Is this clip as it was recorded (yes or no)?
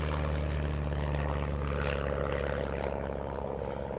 yes